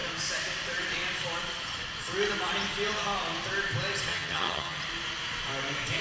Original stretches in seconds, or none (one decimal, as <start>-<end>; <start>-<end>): 0.0-4.1; 4.8-6.0